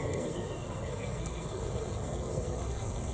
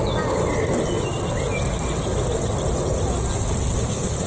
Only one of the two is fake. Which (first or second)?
first